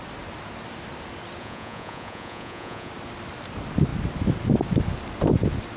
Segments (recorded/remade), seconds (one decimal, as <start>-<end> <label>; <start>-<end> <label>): 0.0-1.4 recorded; 1.4-2.9 remade; 2.9-5.8 recorded